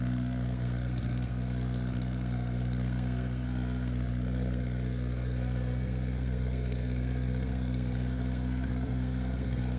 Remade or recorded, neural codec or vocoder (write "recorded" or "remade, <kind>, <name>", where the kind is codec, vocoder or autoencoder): remade, codec, SNAC